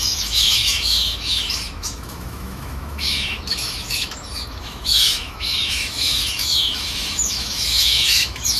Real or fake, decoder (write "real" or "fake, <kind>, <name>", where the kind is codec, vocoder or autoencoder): fake, autoencoder, DAC-VAE